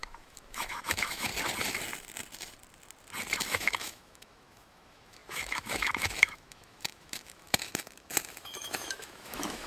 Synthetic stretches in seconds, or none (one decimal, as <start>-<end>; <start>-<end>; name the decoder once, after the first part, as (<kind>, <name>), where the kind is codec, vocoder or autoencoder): 0.0-1.3 (autoencoder, DAC-VAE); 3.4-9.7